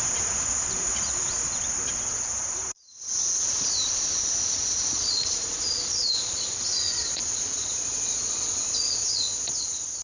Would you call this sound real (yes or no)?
no